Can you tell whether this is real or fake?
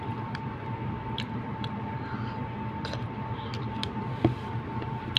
fake